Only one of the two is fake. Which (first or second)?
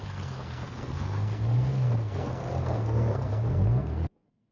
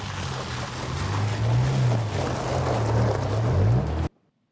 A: first